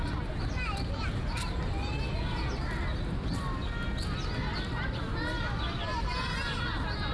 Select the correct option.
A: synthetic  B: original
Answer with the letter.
B